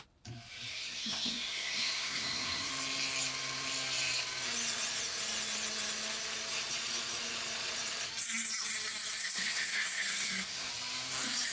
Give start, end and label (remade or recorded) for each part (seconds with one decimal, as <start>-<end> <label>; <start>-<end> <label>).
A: 0.0-0.7 recorded; 0.7-2.7 remade; 2.7-9.2 recorded; 9.2-10.7 remade; 10.7-11.5 recorded